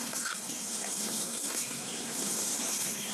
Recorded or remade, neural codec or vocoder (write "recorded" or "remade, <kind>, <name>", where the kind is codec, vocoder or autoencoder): remade, codec, SNAC